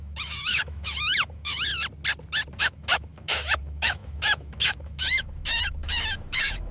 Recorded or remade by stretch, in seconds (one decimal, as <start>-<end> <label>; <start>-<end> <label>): 0.0-1.7 remade; 1.7-2.6 recorded; 2.6-6.7 remade